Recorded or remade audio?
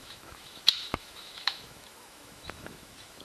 remade